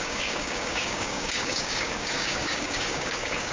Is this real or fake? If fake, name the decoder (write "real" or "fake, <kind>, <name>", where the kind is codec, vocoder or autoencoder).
fake, codec, DAC